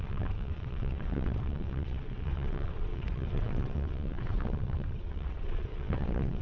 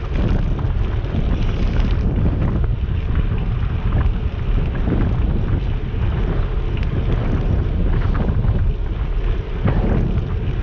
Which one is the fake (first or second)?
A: first